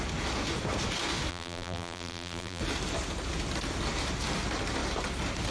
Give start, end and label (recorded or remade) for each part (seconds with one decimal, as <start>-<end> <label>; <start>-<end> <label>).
0.0-1.3 recorded; 1.3-2.6 remade; 2.6-5.5 recorded